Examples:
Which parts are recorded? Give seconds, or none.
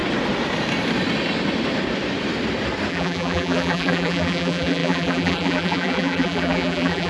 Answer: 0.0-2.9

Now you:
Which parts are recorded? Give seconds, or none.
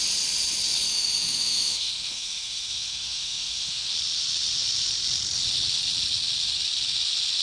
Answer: 0.0-0.9; 3.9-7.4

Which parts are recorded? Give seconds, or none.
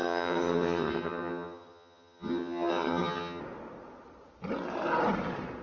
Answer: 3.4-5.6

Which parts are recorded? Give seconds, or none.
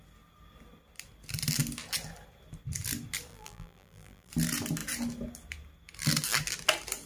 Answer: 0.0-3.3; 4.3-7.1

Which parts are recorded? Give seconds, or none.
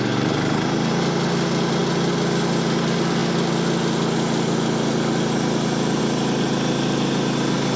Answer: 0.0-7.8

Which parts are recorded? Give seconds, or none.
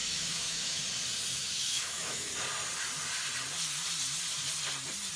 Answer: 0.8-1.3; 2.3-5.2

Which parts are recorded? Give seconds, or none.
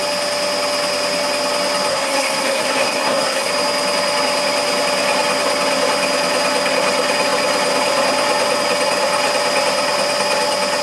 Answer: 0.0-1.9; 3.5-10.8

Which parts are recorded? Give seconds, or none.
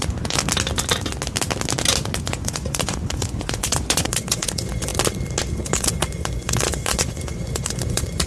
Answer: 0.4-2.2; 4.9-5.6